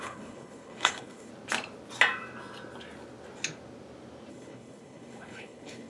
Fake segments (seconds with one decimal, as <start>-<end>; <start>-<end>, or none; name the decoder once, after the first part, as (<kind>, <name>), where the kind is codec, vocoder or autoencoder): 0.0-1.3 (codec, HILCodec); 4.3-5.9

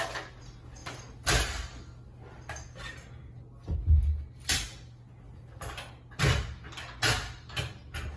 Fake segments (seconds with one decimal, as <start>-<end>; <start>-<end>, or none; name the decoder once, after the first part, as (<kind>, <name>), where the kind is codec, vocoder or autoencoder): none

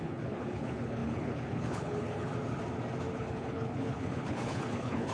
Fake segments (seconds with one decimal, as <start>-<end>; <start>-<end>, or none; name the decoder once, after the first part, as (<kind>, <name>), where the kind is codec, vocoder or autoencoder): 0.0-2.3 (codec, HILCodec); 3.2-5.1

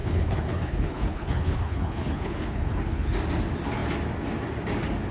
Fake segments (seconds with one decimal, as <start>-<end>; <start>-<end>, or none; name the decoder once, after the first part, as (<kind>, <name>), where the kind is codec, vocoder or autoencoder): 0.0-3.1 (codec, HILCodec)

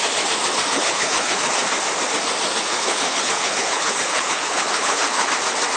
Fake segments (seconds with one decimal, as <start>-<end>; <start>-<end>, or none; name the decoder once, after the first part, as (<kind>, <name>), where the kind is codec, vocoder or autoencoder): 0.7-1.6 (codec, HILCodec); 2.7-5.3

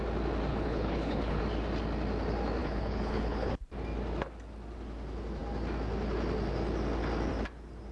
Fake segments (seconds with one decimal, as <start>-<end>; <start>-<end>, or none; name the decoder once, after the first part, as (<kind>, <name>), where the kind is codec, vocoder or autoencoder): 0.5-1.4 (codec, HILCodec); 2.6-3.6

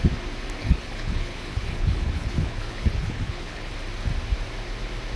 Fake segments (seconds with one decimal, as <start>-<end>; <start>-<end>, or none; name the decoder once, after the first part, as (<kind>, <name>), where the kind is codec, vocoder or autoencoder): 0.6-3.7 (codec, HILCodec)